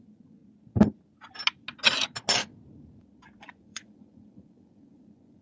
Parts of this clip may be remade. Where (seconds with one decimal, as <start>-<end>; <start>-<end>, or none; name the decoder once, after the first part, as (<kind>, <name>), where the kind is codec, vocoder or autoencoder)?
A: 0.0-0.4 (vocoder, Vocos); 3.4-5.4